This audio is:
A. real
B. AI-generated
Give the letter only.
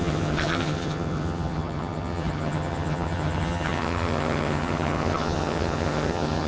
B